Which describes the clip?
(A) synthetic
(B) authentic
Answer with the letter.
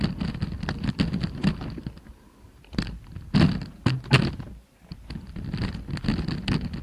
B